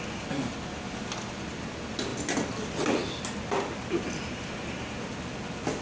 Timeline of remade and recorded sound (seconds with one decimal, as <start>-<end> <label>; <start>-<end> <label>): 0.0-5.8 recorded